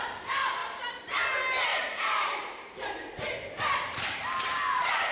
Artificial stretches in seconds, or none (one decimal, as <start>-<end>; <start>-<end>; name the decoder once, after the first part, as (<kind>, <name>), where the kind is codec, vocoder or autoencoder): 0.6-1.2 (vocoder, BigVGAN v2); 1.7-5.1